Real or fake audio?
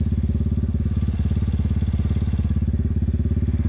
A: real